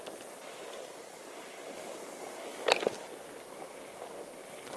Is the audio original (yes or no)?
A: yes